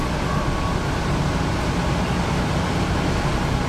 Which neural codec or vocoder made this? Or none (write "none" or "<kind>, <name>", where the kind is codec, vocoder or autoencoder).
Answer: none